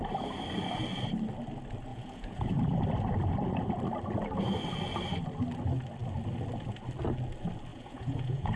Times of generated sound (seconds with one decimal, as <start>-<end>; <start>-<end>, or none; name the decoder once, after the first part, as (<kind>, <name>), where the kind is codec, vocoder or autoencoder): 1.9-2.5 (vocoder, Vocos); 7.7-8.6